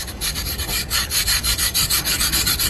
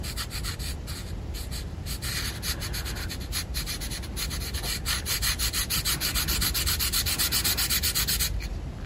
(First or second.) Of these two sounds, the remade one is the first